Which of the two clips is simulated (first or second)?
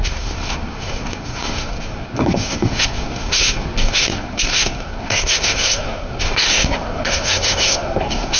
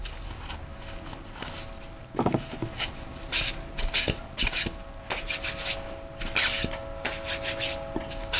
first